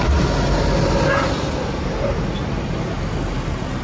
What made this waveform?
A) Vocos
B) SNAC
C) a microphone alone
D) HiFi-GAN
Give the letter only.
C